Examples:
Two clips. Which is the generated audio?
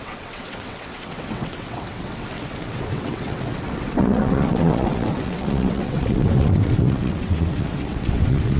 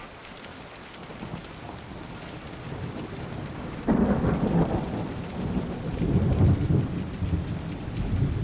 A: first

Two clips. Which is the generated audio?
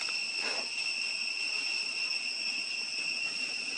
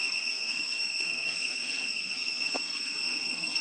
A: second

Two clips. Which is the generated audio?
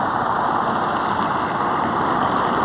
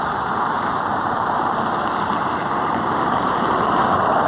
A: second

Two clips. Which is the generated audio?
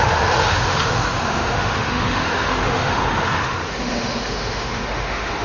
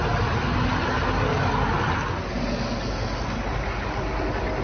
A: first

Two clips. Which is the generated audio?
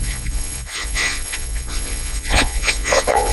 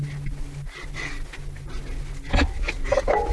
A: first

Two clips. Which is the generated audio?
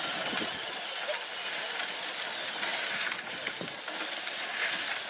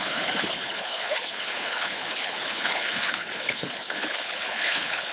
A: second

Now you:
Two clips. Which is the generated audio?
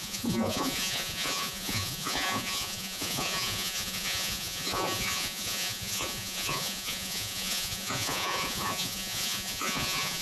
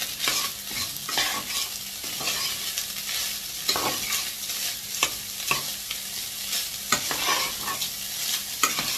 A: first